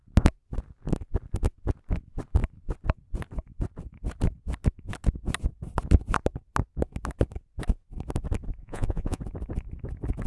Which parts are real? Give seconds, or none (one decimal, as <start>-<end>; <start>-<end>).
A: 0.0-8.6; 9.2-10.3